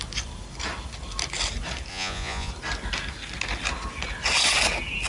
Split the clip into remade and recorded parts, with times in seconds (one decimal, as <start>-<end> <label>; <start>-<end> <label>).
0.0-1.9 recorded; 1.9-2.5 remade; 2.5-5.1 recorded